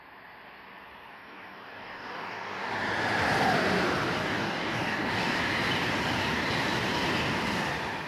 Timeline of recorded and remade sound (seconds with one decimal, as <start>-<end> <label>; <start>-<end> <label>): 0.0-1.1 recorded; 1.1-2.7 remade; 2.7-4.2 recorded; 4.2-5.4 remade; 5.4-8.1 recorded